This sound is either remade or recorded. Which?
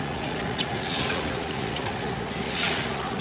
remade